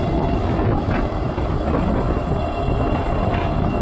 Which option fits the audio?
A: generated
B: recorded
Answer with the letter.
B